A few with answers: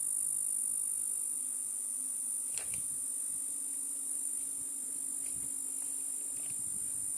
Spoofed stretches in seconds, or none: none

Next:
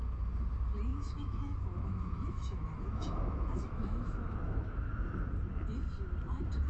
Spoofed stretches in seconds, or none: 0.9-4.9 (autoencoder, DAC-VAE)